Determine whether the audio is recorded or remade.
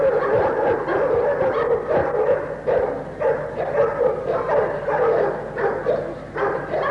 recorded